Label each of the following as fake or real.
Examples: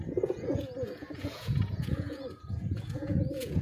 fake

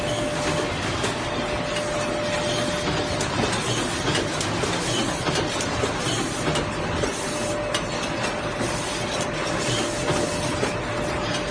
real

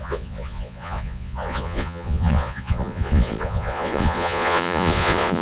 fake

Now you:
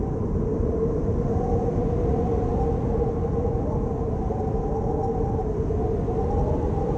real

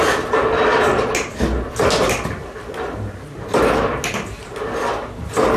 real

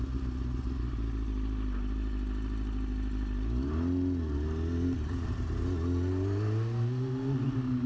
real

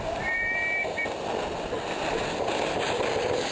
real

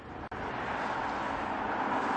real